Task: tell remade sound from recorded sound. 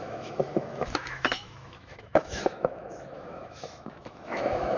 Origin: remade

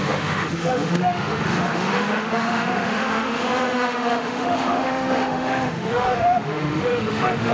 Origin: remade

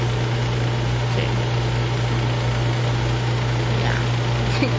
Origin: recorded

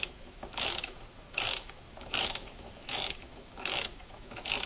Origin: remade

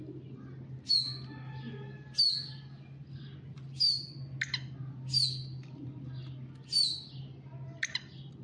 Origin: recorded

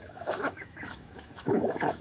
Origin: remade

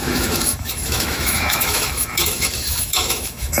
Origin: remade